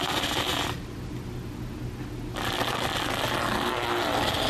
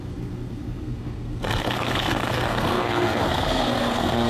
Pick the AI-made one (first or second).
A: second